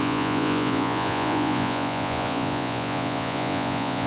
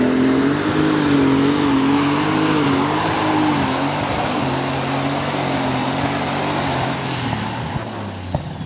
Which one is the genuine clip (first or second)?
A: second